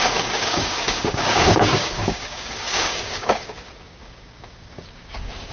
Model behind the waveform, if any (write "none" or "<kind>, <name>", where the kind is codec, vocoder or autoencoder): codec, DAC